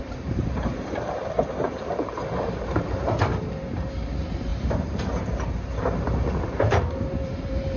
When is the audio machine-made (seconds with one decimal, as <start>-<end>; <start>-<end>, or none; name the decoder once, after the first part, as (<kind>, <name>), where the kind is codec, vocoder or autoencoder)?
0.0-7.8 (vocoder, BigVGAN v2)